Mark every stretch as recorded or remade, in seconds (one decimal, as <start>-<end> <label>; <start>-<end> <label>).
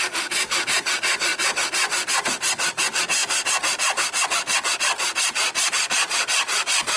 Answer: 0.0-7.0 recorded